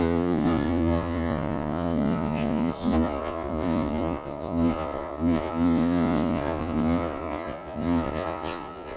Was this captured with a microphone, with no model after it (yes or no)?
no